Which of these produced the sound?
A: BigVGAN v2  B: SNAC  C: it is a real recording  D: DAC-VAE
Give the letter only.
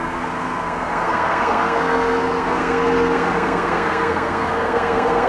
B